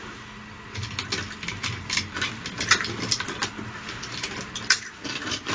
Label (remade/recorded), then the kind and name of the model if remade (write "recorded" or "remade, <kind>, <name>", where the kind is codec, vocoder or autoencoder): recorded